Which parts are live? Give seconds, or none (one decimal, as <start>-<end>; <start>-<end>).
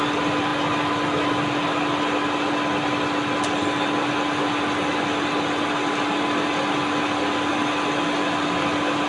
0.0-9.1